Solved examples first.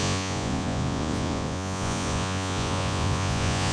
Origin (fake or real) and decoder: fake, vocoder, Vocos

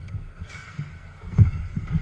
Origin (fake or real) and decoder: fake, codec, SNAC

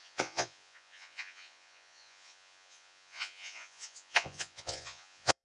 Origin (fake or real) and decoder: fake, vocoder, Vocos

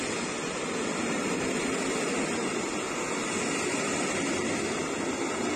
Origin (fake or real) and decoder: real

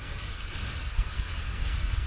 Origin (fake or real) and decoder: fake, codec, SNAC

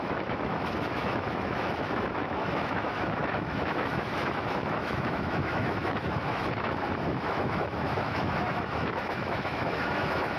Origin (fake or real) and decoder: fake, autoencoder, DAC-VAE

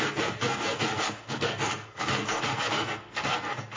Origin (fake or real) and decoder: fake, codec, SNAC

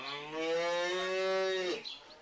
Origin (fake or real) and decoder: real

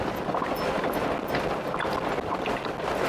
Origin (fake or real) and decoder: real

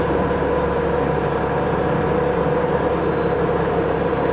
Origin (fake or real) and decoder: real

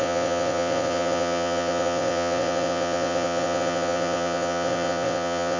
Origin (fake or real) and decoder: fake, vocoder, WaveNeXt